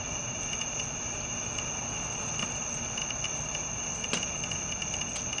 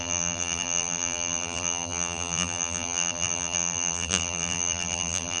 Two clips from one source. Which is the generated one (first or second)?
second